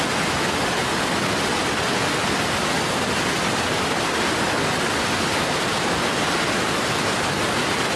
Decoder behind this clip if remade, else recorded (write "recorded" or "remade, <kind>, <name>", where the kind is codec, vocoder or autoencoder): recorded